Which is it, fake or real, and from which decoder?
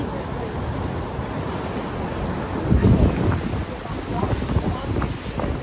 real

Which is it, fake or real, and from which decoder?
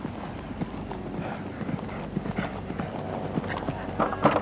real